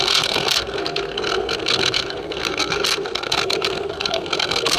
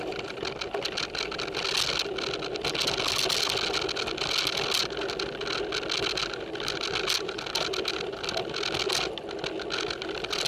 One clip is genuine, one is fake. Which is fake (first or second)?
first